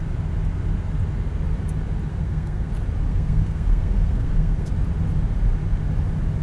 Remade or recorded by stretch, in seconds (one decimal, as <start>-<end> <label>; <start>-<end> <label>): 0.0-2.1 recorded; 2.1-2.7 remade; 2.7-3.1 recorded; 3.1-4.7 remade; 4.7-6.4 recorded